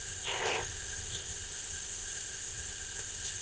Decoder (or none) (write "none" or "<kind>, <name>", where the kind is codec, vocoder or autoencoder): codec, ZipCodec